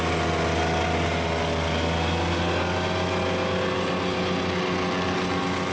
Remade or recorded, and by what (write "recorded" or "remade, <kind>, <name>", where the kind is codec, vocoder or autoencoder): recorded